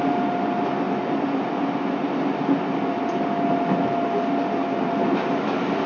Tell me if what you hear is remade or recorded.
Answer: recorded